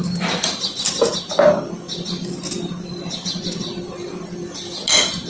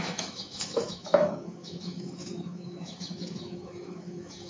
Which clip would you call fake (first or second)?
second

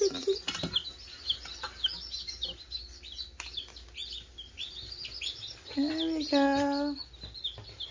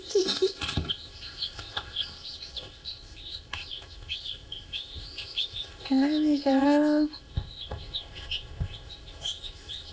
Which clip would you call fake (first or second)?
second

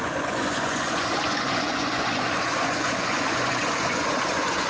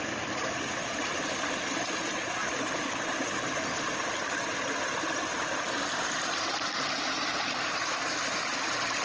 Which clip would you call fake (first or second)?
first